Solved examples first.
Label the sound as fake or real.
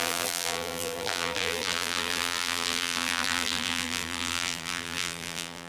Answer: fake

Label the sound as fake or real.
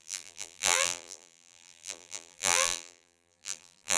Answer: fake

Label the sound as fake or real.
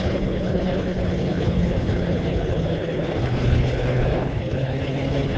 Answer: fake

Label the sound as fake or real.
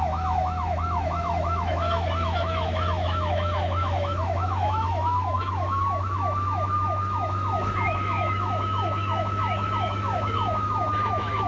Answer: fake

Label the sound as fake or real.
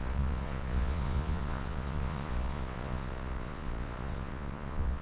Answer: fake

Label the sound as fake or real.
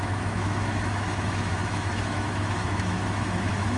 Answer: fake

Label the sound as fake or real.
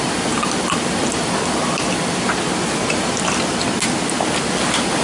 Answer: real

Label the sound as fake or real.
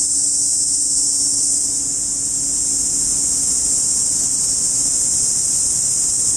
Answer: real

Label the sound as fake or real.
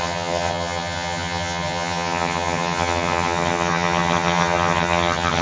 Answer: fake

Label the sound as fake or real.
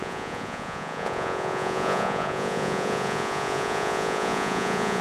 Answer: fake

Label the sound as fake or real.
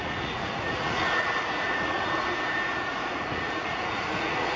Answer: fake